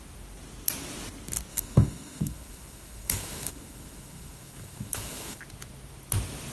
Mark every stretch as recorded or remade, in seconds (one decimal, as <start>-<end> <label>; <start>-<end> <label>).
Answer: 0.0-1.5 recorded; 1.5-5.4 remade; 5.4-6.5 recorded